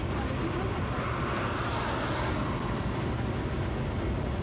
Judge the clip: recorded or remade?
recorded